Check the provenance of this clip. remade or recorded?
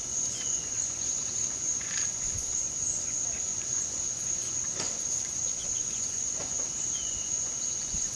remade